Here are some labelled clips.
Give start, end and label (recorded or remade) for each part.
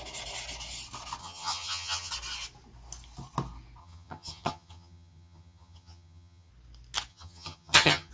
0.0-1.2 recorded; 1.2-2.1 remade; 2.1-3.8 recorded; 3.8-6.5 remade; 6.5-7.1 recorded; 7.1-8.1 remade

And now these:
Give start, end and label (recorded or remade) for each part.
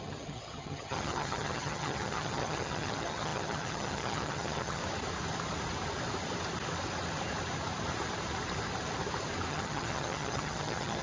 0.0-4.8 remade; 4.8-9.5 recorded; 9.5-11.0 remade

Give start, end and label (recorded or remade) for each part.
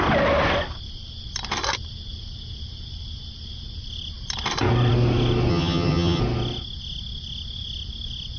0.0-5.5 recorded; 5.5-6.2 remade; 6.2-8.4 recorded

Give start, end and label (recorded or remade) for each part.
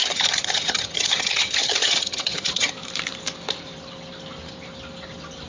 0.0-2.7 remade; 2.7-5.5 recorded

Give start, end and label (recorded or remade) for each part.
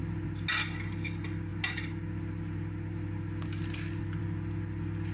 0.0-5.1 recorded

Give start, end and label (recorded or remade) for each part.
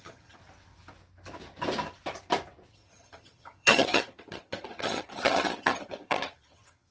0.0-0.4 remade; 0.4-2.7 recorded; 2.7-6.9 remade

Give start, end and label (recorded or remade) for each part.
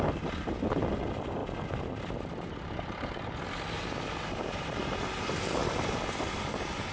0.0-6.9 recorded